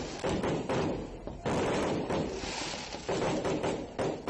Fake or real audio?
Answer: real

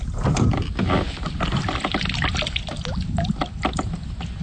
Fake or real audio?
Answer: real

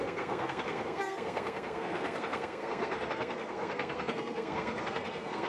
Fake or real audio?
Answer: fake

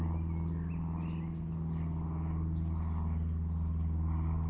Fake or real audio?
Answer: real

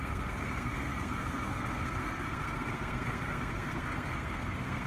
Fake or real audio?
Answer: fake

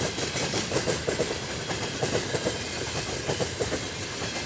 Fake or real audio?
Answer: fake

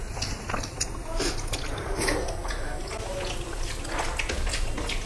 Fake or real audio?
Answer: real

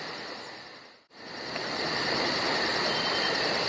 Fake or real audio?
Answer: real